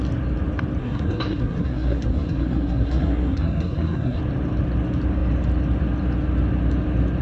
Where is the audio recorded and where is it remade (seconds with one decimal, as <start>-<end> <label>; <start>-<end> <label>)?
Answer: 0.0-0.8 recorded; 0.8-4.2 remade; 4.2-7.2 recorded